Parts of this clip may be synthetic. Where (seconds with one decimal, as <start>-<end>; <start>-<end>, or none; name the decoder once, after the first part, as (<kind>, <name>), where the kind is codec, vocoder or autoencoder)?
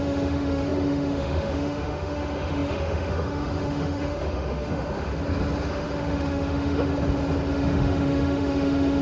0.0-5.1 (autoencoder, DAC-VAE); 5.7-6.9; 7.5-9.0